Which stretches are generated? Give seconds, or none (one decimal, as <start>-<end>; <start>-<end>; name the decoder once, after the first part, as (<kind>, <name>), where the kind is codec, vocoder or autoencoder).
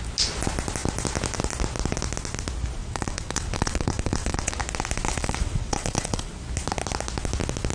2.8-4.6 (vocoder, WaveNeXt); 5.1-6.3